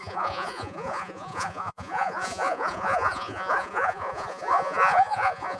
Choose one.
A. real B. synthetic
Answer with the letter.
B